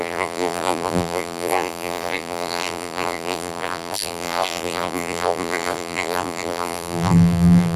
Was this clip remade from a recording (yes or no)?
yes